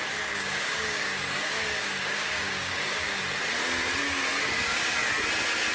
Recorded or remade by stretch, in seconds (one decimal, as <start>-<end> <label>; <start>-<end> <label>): 0.0-3.2 remade; 3.2-4.0 recorded; 4.0-5.1 remade; 5.1-5.7 recorded